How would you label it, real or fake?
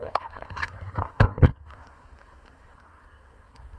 fake